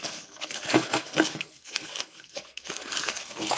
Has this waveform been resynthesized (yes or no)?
yes